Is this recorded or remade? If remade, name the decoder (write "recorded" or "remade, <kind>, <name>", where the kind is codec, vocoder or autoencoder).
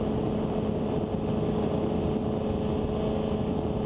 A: recorded